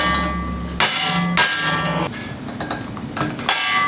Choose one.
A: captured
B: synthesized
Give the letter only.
A